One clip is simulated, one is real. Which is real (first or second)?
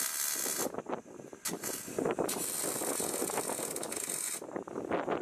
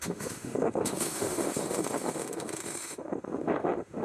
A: first